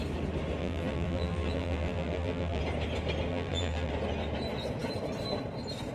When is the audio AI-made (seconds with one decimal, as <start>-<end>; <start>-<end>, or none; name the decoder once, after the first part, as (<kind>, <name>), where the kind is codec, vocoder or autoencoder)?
0.6-2.6 (vocoder, BigVGAN v2); 3.3-3.9